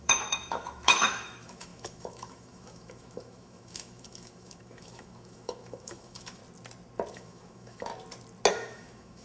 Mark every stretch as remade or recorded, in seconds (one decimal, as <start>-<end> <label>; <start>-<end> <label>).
0.0-6.4 remade; 6.4-7.1 recorded; 7.1-7.9 remade; 7.9-8.5 recorded; 8.5-9.2 remade